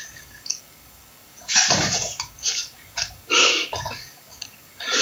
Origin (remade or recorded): remade